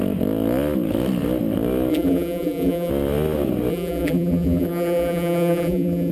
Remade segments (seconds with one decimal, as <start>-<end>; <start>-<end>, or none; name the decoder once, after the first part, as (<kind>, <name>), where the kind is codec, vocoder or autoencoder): 1.9-2.9 (vocoder, BigVGAN v2); 3.7-6.1